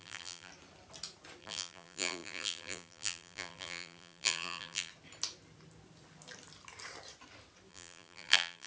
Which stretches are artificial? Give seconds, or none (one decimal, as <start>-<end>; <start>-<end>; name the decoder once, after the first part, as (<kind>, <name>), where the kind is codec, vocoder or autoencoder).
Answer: 0.0-0.5 (vocoder, BigVGAN v2); 1.4-4.9; 7.7-8.7